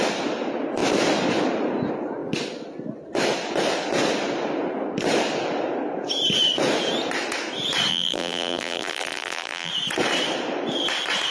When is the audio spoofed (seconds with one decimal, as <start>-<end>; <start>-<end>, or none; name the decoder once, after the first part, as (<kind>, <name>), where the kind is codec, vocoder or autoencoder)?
7.9-9.7 (vocoder, BigVGAN v2)